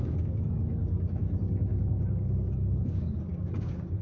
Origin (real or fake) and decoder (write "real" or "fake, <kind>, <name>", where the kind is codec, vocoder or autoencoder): fake, codec, DAC